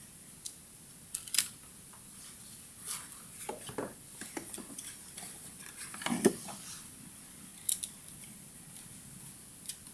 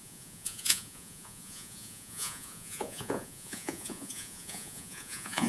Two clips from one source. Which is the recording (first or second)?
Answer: first